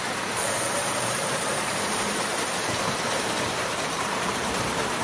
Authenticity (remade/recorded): remade